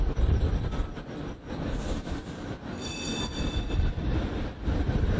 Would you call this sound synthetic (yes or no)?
yes